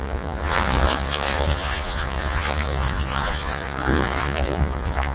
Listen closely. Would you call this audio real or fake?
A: fake